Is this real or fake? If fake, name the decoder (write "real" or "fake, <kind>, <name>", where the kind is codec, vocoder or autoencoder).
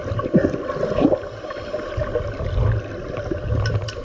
real